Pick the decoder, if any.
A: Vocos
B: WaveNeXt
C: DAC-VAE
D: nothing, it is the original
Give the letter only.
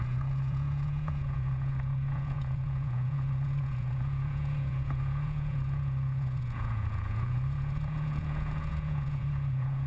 A